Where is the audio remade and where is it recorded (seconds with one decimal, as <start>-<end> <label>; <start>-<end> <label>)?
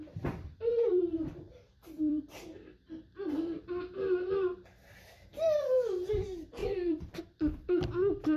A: 0.0-0.7 recorded; 0.7-3.6 remade; 3.6-5.3 recorded; 5.3-6.1 remade; 6.1-6.6 recorded; 6.6-7.2 remade; 7.2-8.4 recorded